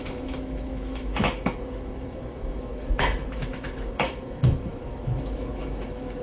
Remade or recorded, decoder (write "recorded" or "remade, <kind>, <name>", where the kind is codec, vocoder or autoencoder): remade, autoencoder, DAC-VAE